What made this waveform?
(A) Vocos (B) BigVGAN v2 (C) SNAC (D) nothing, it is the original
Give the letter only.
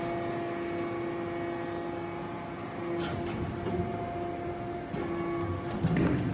D